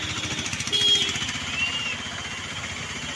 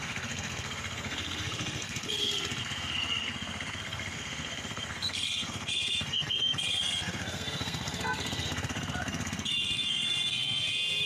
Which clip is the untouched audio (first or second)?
first